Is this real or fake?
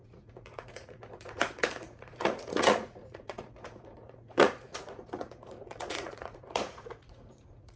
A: fake